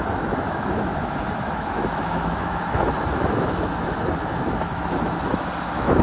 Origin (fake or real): fake